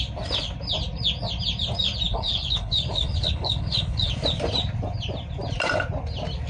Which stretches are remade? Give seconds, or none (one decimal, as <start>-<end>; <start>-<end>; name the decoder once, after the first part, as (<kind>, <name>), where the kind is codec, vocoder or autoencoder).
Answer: 2.1-4.1 (codec, HILCodec)